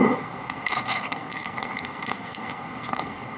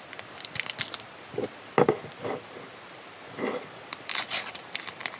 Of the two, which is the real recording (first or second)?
second